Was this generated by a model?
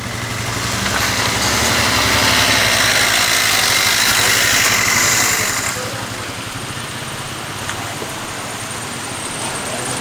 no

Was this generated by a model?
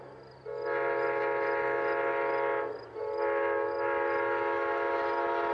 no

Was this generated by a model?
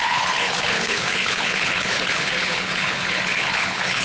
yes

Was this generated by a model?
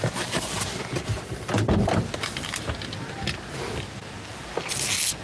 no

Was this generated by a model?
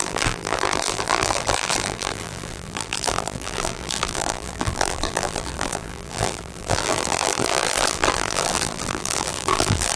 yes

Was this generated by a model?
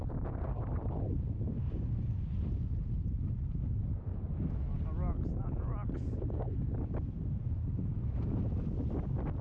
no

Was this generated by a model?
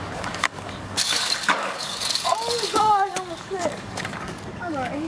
yes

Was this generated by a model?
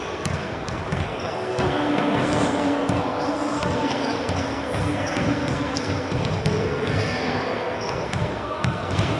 yes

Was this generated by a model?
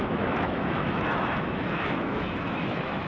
yes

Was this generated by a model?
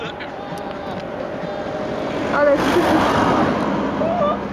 no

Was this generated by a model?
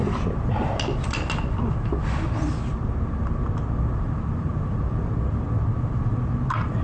no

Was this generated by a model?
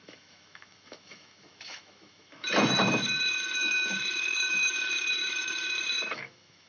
yes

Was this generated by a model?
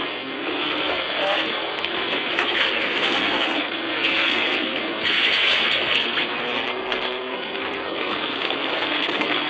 yes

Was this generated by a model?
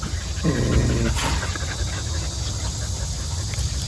no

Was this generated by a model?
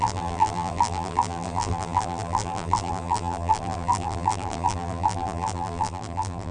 yes